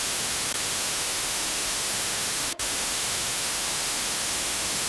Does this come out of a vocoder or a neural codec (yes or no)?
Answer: yes